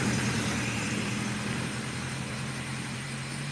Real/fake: fake